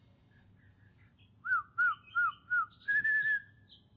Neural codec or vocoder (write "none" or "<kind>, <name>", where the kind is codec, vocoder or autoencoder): none